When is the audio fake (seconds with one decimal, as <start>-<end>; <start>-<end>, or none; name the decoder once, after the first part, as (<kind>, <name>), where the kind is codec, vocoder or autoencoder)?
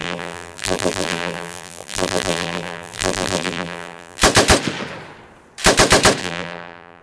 0.0-4.2 (vocoder, BigVGAN v2); 6.2-7.0